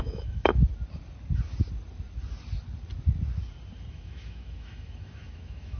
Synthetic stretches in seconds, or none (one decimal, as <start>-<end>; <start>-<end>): 0.0-0.6; 3.9-5.8